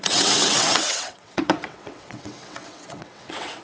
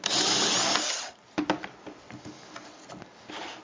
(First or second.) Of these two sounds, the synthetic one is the first